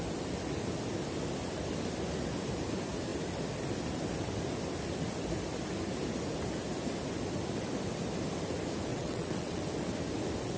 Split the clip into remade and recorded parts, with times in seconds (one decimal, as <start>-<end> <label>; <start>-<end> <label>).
0.0-8.9 recorded; 8.9-9.6 remade; 9.6-10.6 recorded